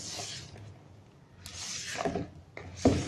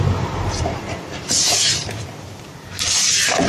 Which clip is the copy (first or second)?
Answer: second